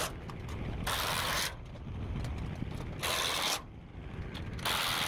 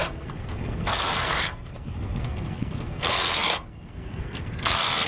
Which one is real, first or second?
first